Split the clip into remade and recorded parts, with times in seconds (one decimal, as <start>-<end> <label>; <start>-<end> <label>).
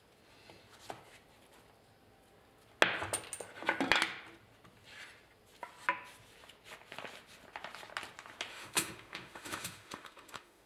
0.0-8.5 recorded; 8.5-10.7 remade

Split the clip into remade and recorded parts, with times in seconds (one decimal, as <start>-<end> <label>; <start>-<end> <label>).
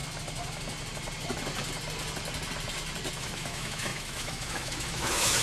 0.0-3.2 recorded; 3.2-5.4 remade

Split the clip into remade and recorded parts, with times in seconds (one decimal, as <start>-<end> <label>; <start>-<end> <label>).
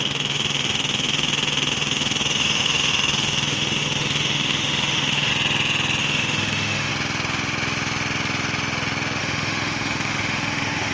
0.0-5.3 remade; 5.3-6.0 recorded; 6.0-6.9 remade; 6.9-9.2 recorded; 9.2-10.9 remade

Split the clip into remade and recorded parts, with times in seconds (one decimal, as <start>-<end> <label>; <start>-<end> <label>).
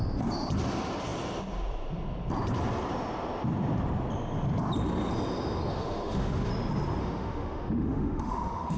0.0-5.7 recorded; 5.7-6.5 remade; 6.5-7.0 recorded; 7.0-8.8 remade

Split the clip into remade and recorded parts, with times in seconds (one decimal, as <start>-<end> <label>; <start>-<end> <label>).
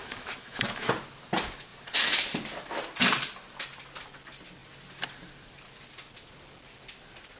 0.0-0.9 remade; 0.9-7.4 recorded